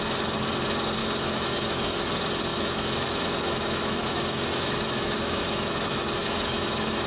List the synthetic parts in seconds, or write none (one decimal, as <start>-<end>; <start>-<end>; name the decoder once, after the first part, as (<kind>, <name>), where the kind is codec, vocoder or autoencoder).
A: 1.0-2.1 (autoencoder, DAC-VAE); 2.5-7.1